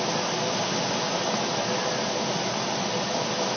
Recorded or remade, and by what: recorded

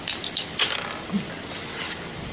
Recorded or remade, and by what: recorded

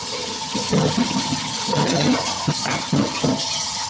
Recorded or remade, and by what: remade, vocoder, HiFi-GAN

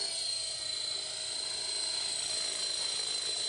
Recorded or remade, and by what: recorded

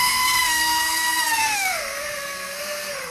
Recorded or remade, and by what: remade, codec, SNAC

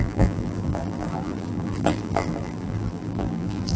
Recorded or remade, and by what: remade, vocoder, BigVGAN v2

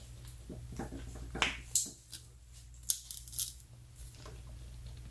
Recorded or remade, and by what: recorded